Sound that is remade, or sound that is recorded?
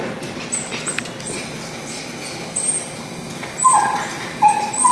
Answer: recorded